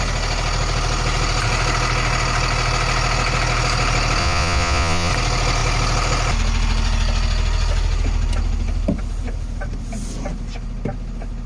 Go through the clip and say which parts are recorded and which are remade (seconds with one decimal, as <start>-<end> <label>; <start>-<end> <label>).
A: 0.0-4.2 recorded; 4.2-5.1 remade; 5.1-11.5 recorded